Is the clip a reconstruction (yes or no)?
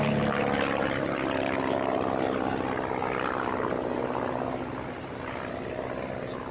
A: no